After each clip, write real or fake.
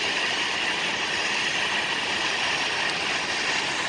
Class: real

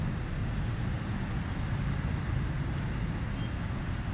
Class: real